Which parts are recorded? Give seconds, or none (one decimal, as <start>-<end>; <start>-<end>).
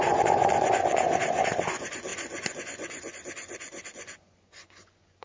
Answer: none